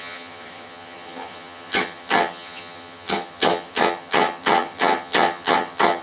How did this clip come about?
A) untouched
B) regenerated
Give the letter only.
B